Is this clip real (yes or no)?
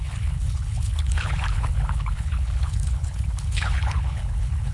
no